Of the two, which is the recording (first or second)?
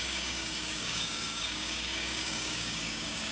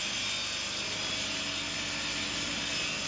second